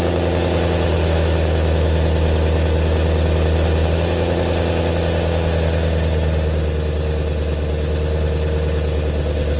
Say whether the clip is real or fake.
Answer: real